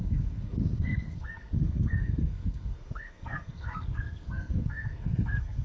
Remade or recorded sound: remade